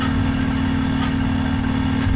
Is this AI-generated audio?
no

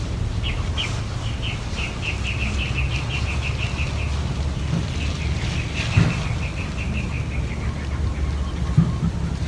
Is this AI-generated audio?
no